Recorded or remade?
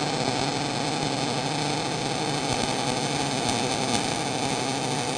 recorded